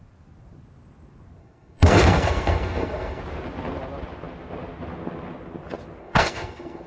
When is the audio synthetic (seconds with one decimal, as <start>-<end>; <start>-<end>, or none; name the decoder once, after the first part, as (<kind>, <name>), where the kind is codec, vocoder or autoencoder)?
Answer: 1.4-3.2 (codec, SNAC); 6.0-6.9

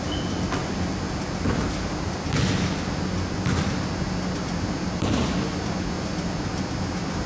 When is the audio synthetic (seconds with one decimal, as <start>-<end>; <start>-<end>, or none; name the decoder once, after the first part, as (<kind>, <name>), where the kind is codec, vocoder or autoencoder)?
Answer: none

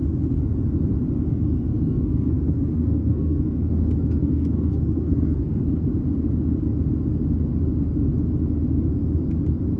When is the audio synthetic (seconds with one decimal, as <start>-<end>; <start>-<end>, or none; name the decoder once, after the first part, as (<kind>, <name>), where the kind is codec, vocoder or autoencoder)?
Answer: 1.3-5.6 (codec, SNAC)

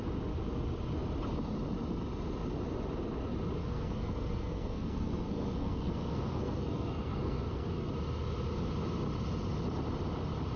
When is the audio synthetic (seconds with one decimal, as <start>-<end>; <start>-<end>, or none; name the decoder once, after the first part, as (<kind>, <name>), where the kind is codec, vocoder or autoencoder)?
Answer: 3.6-7.9 (codec, SNAC)

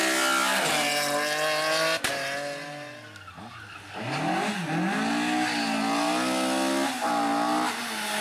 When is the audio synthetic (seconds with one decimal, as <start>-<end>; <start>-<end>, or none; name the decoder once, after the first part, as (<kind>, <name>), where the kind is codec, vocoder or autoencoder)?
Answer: none

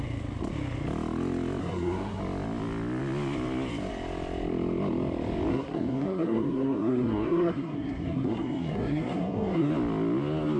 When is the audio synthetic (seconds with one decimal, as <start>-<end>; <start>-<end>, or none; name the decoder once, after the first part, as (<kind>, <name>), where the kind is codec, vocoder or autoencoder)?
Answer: 1.6-2.2 (codec, SNAC); 5.5-9.7